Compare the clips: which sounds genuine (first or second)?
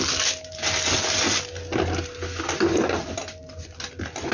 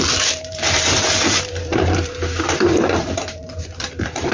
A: first